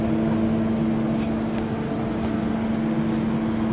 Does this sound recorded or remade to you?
recorded